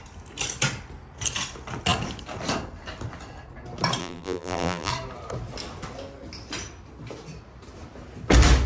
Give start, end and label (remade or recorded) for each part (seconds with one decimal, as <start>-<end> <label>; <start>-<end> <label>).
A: 0.0-4.0 recorded; 4.0-4.9 remade; 4.9-8.7 recorded